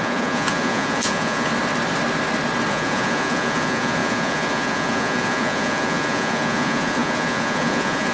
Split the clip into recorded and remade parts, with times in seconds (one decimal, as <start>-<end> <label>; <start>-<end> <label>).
0.0-1.5 remade; 1.5-2.7 recorded; 2.7-8.1 remade